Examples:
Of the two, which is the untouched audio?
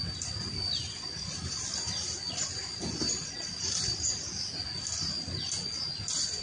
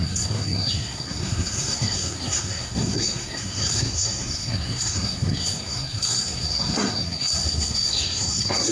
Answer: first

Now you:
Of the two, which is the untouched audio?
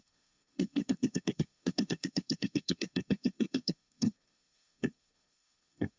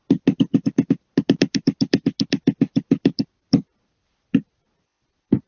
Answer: second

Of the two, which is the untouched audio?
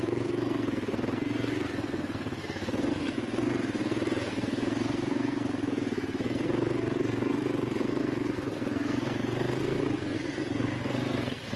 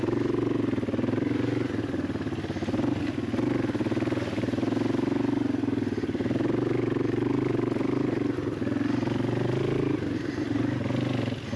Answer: second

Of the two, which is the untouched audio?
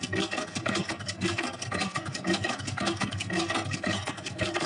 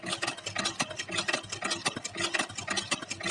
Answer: second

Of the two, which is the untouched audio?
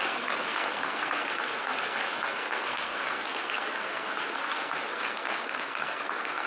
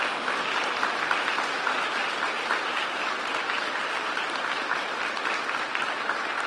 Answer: second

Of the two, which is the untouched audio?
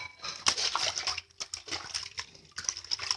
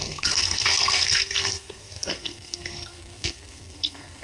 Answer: first